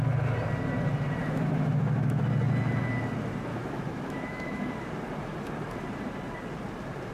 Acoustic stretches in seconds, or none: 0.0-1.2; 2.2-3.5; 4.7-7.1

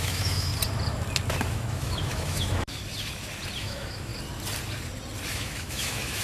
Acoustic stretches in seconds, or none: 0.5-1.5; 2.8-3.6; 4.1-5.3

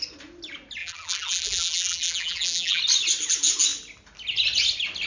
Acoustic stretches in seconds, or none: 0.0-0.8; 2.8-5.1

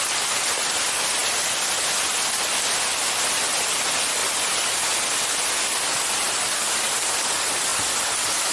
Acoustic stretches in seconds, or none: 0.0-8.5